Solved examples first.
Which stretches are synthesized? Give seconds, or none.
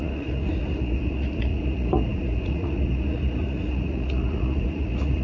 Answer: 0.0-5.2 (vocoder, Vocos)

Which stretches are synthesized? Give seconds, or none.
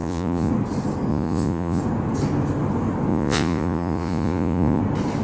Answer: 0.0-0.5 (vocoder, Vocos); 1.1-1.8; 3.1-4.8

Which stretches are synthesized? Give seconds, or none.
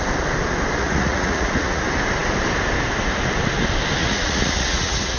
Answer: 0.8-1.8 (vocoder, Vocos); 4.0-5.2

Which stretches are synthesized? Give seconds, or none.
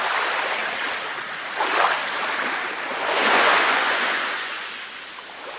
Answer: 2.9-4.9 (vocoder, Vocos)